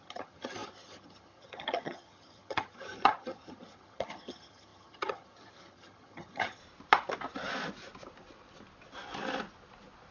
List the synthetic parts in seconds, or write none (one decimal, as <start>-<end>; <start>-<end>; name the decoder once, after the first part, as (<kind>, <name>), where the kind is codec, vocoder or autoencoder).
0.0-6.6 (vocoder, HiFi-GAN)